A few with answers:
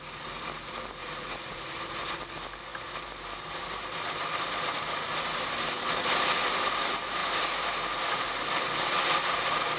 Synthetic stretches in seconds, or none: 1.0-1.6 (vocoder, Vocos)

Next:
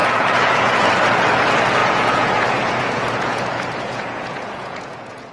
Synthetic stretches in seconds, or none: 0.0-0.9 (vocoder, Vocos); 1.8-5.3

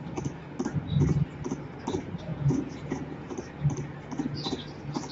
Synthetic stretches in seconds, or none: 2.3-3.3 (vocoder, Vocos)

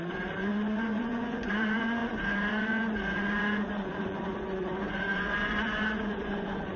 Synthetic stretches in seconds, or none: 0.0-6.8 (vocoder, Vocos)

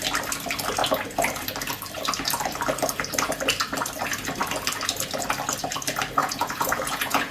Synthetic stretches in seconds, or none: 6.2-7.3 (vocoder, Vocos)

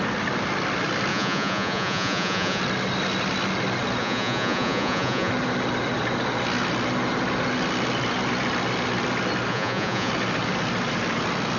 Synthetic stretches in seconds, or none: 1.1-2.6 (vocoder, Vocos); 4.0-5.3; 9.5-10.1